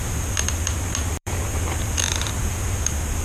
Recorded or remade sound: remade